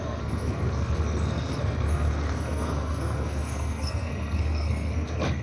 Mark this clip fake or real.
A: fake